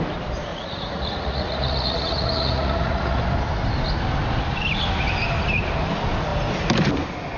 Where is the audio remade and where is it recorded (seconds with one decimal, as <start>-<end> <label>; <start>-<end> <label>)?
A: 0.0-0.5 recorded; 0.5-3.2 remade; 3.2-7.4 recorded